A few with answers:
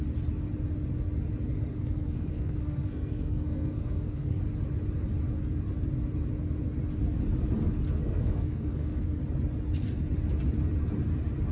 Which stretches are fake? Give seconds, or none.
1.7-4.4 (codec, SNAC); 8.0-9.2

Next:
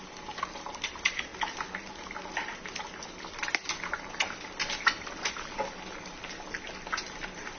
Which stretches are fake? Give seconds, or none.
none